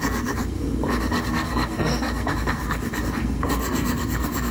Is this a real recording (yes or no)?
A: no